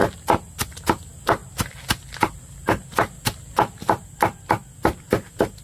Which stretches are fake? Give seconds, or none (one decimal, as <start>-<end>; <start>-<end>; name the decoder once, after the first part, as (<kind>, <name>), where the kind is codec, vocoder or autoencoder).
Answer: 0.0-0.7 (vocoder, BigVGAN v2); 1.4-4.4